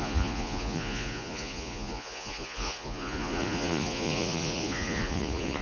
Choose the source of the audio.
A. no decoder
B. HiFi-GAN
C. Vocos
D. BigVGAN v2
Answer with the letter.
C